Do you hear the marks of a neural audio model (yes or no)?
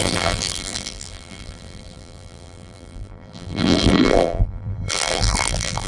yes